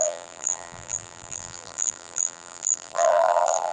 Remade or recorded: remade